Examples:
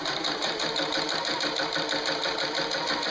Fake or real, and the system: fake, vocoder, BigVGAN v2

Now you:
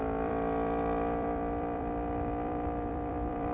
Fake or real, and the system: fake, vocoder, BigVGAN v2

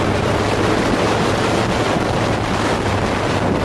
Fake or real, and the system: real